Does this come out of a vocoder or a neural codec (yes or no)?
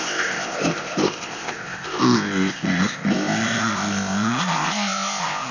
yes